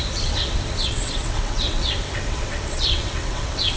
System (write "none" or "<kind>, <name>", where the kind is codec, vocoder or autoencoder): vocoder, WaveNeXt